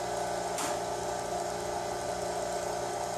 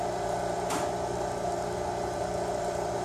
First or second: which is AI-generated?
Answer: second